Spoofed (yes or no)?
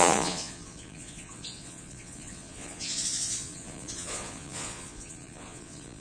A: yes